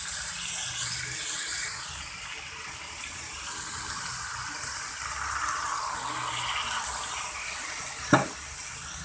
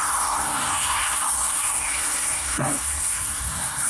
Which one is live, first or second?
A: first